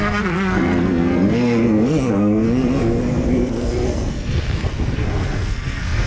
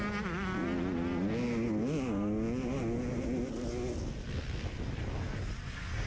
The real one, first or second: second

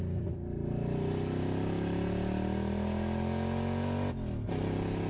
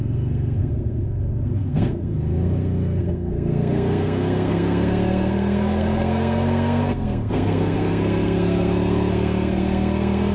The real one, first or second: first